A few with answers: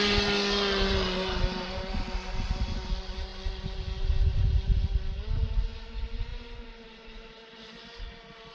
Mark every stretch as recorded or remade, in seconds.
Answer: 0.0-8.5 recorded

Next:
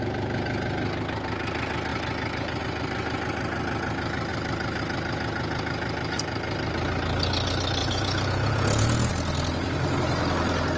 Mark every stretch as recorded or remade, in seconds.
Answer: 0.0-7.8 recorded; 7.8-9.1 remade; 9.1-10.8 recorded

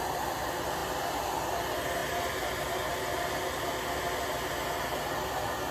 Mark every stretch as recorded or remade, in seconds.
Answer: 0.0-5.7 recorded

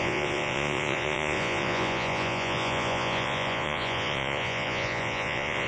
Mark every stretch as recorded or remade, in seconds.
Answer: 0.0-5.7 remade

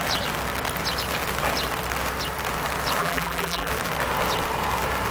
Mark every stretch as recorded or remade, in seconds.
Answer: 0.0-3.0 recorded; 3.0-3.7 remade; 3.7-5.1 recorded

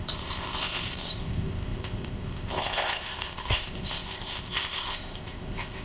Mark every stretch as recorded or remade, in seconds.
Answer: 0.0-5.8 remade